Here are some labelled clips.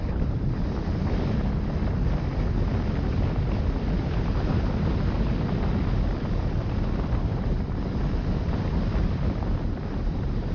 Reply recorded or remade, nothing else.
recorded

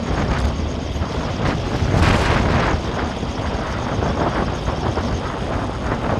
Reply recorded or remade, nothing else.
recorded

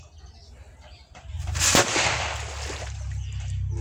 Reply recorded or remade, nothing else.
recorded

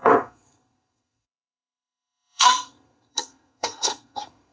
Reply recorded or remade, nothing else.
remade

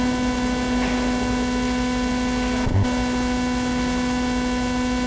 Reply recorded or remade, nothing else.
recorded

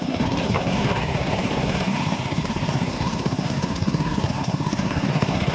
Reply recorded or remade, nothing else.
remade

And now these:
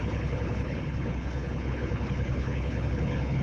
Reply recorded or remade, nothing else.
remade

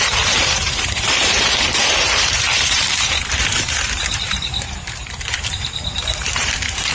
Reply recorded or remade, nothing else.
remade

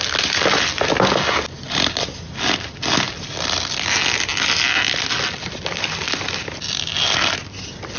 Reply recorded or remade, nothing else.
recorded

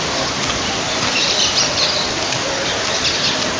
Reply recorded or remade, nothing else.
recorded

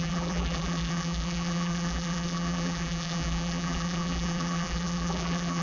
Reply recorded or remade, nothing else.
remade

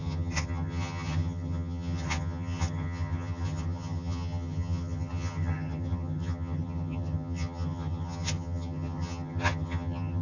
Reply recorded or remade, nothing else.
remade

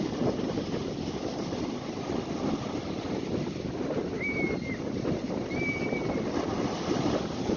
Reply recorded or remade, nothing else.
recorded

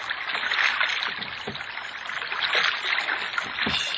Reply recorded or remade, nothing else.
recorded